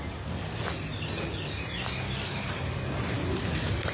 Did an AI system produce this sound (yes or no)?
no